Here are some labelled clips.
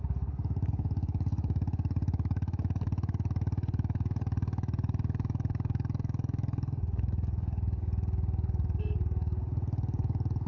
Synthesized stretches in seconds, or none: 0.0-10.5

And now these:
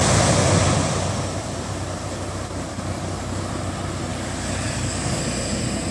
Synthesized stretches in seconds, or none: 2.7-3.5; 4.1-5.2

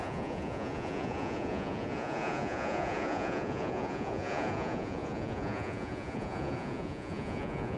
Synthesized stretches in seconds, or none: 0.0-7.8

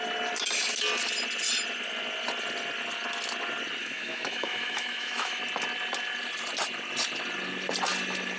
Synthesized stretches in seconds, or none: 3.8-5.4

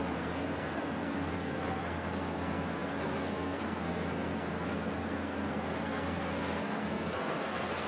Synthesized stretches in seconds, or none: 0.0-7.9

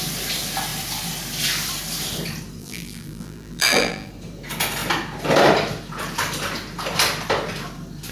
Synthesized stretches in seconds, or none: 2.6-4.1